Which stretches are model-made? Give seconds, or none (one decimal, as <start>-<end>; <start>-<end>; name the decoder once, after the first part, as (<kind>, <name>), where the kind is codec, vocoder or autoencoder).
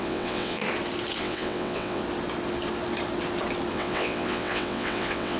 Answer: 0.0-0.6 (vocoder, WaveNeXt); 1.2-2.0; 3.7-5.4